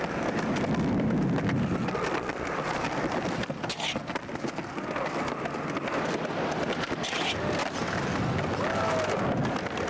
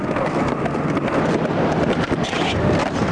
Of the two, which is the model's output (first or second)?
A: second